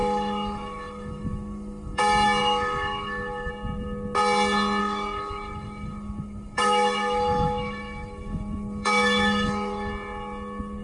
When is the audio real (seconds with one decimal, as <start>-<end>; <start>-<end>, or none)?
2.0-2.4; 3.5-4.8; 9.9-10.8